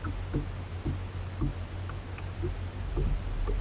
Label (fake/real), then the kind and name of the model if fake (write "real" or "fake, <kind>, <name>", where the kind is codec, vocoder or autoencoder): real